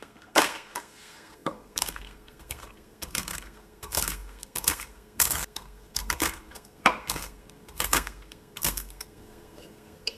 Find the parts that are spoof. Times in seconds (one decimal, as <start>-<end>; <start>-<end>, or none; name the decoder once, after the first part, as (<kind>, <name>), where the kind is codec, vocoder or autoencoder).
0.0-10.2 (codec, SNAC)